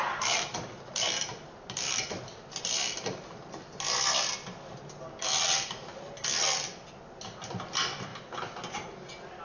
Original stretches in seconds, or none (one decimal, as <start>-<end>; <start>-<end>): 0.0-9.4